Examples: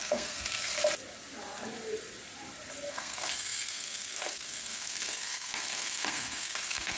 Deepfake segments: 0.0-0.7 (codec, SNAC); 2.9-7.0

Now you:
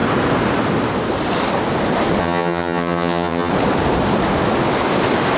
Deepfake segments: 2.2-3.5 (vocoder, HiFi-GAN)

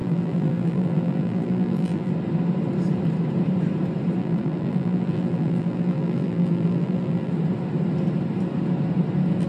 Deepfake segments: 0.0-2.1 (vocoder, BigVGAN v2); 4.2-7.3

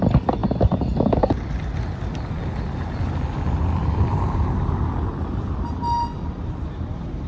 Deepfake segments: none

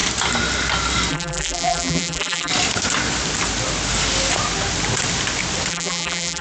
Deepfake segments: 1.1-2.5 (vocoder, BigVGAN v2); 5.7-6.4